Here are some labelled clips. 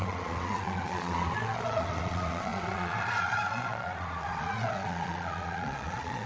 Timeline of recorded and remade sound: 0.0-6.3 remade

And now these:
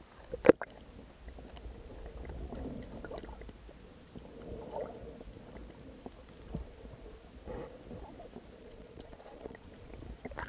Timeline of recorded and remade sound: 0.0-8.6 recorded; 8.6-9.9 remade; 9.9-10.5 recorded